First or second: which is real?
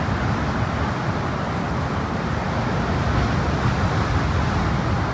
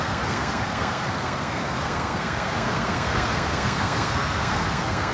first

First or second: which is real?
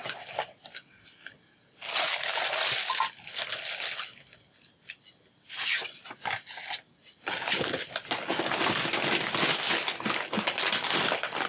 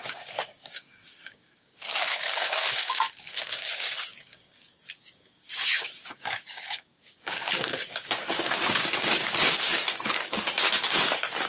first